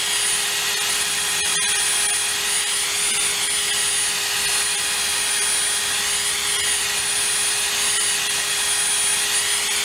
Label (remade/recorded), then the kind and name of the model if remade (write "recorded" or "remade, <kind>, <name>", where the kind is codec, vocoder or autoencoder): recorded